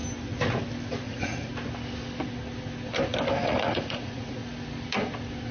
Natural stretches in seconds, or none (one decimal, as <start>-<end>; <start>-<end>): 0.0-1.0; 1.5-3.4; 4.4-5.5